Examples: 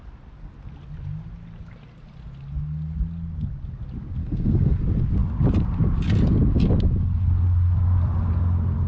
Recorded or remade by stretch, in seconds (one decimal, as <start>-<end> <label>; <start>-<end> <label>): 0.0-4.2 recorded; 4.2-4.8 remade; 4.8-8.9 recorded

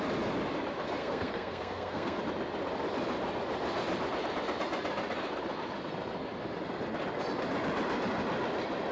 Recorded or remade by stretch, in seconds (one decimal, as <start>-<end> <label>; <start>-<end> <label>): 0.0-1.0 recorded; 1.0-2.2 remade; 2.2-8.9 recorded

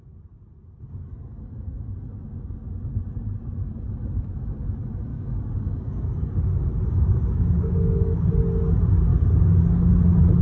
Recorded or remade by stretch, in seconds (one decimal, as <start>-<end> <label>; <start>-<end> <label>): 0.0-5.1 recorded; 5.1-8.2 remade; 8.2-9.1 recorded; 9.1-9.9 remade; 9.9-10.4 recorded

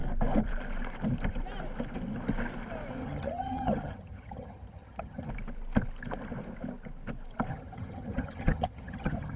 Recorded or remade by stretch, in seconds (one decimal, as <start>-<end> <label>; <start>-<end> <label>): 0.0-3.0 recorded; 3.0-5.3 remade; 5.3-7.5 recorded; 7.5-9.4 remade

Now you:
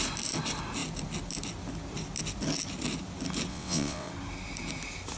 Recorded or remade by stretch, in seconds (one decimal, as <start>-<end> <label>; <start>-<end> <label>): 0.0-3.5 recorded; 3.5-4.1 remade; 4.1-5.2 recorded